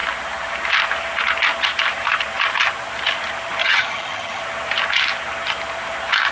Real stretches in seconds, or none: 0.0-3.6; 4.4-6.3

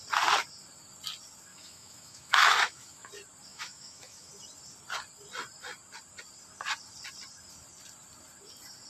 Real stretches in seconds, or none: 0.0-1.5; 3.1-3.5; 4.3-8.9

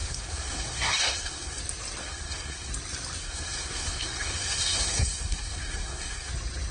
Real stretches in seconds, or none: 1.6-2.0; 2.7-3.2; 6.3-6.7

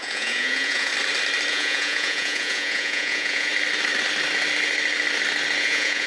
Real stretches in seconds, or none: 0.9-1.5; 3.5-5.6

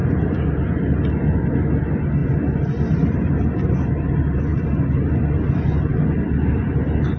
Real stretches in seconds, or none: 0.0-7.2

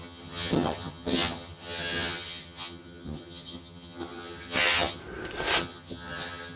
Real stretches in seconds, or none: 5.0-5.6

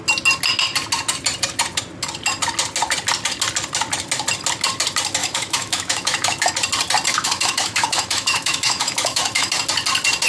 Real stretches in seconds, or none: 0.0-5.2; 6.5-7.1; 9.5-10.3